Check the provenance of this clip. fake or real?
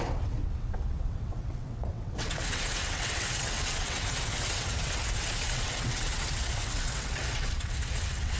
fake